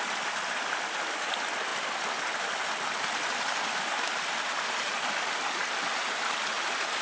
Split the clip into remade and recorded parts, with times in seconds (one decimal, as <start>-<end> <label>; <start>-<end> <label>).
0.0-7.0 recorded